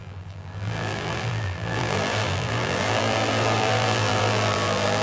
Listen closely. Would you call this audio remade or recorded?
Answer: remade